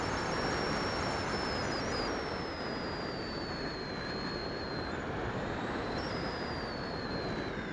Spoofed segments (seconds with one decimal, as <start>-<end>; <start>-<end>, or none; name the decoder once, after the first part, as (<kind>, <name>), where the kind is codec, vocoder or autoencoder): 4.4-7.1 (vocoder, BigVGAN v2)